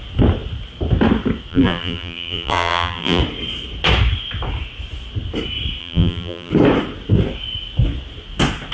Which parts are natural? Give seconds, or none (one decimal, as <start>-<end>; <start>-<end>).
0.0-1.5; 3.2-5.8; 6.5-8.7